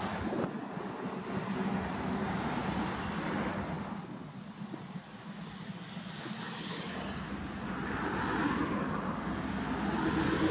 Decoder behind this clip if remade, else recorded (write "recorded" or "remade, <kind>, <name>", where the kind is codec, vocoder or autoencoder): recorded